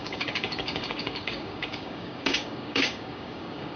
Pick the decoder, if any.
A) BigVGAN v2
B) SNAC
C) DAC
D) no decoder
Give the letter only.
C